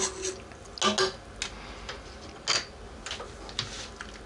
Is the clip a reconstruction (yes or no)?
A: no